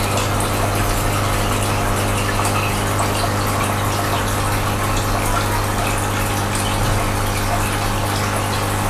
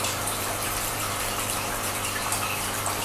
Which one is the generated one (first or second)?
second